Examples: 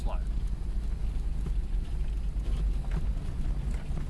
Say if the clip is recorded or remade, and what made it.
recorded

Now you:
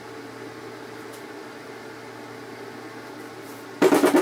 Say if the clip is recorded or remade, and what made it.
recorded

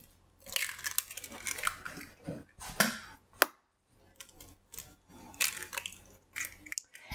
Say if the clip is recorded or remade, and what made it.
recorded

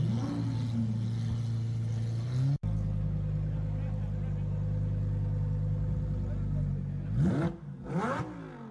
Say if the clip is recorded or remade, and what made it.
recorded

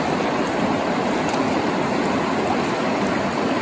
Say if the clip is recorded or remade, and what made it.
recorded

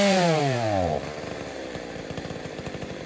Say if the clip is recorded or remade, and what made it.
remade, vocoder, BigVGAN v2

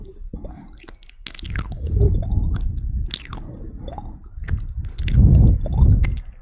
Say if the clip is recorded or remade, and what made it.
recorded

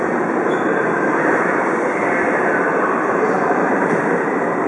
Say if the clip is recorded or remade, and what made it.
remade, vocoder, BigVGAN v2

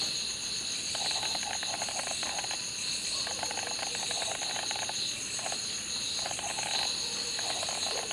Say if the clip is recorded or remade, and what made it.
recorded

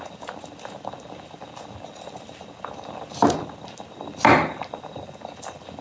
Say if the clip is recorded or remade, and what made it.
recorded